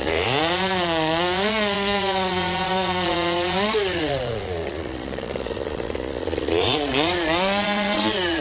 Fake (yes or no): yes